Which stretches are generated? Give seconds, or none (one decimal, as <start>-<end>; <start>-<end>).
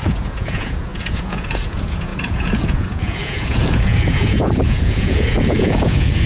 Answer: 0.0-6.3